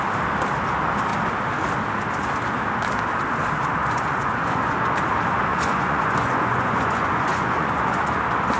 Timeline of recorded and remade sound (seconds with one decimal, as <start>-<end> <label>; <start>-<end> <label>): 0.0-3.8 recorded; 3.8-4.9 remade; 4.9-5.5 recorded; 5.5-8.2 remade; 8.2-8.6 recorded